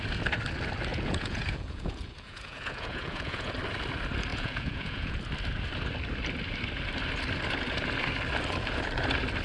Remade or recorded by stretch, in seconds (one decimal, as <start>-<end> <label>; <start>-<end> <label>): 0.0-0.9 recorded; 0.9-3.5 remade; 3.5-4.3 recorded; 4.3-5.2 remade; 5.2-9.4 recorded